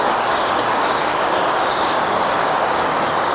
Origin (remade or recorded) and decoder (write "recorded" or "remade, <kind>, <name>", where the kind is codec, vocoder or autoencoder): remade, codec, DAC